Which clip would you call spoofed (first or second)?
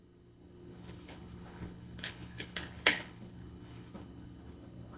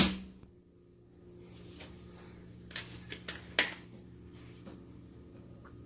first